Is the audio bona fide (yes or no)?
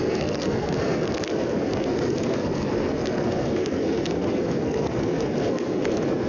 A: no